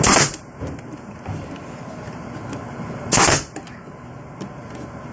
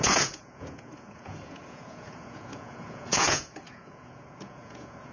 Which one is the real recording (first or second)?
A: first